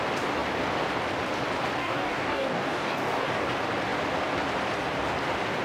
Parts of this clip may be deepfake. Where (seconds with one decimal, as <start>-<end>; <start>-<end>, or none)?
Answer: 1.8-3.5